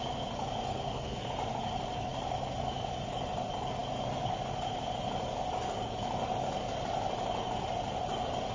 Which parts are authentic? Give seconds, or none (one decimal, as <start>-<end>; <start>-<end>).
0.0-0.7; 1.3-8.5